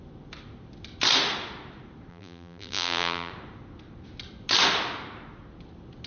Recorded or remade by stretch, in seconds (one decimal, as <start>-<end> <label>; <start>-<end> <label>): 0.0-2.1 recorded; 2.1-3.3 remade; 3.3-6.1 recorded